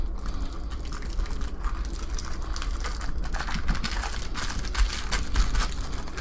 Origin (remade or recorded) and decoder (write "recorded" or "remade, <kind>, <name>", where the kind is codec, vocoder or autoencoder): recorded